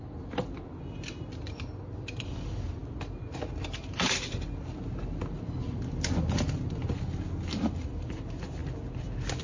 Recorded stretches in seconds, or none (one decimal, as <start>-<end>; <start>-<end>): 0.0-9.4